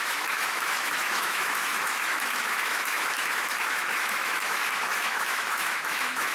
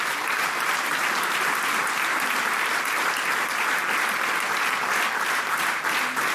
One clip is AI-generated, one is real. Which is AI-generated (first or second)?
first